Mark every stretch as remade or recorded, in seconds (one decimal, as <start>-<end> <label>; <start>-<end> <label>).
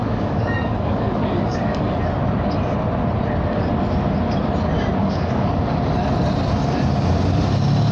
0.0-2.0 remade; 2.0-5.0 recorded; 5.0-5.6 remade; 5.6-7.9 recorded